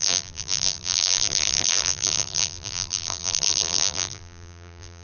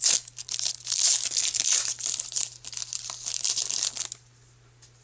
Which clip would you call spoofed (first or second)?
first